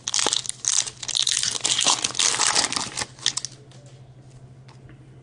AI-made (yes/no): no